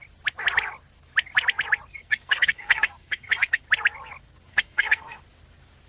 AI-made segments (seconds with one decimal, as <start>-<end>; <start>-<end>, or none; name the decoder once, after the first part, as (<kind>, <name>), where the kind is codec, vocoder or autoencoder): 1.9-3.6 (codec, SNAC); 4.5-5.2